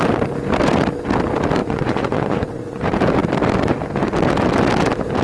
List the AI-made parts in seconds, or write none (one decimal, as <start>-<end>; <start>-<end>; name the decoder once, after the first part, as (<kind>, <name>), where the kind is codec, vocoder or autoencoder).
1.6-2.8 (vocoder, Vocos)